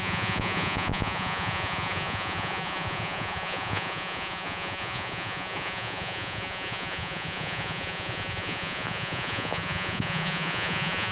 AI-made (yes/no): yes